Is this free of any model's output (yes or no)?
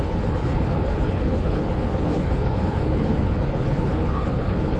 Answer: no